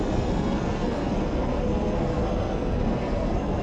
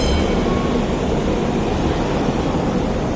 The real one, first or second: second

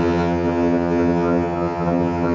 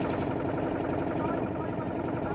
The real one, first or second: second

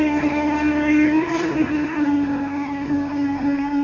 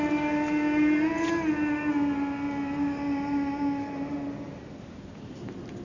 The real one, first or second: second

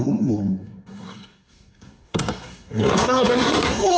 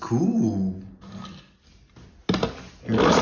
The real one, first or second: second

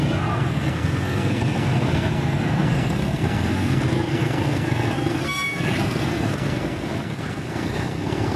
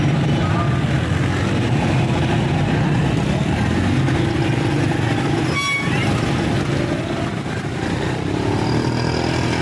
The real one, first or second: second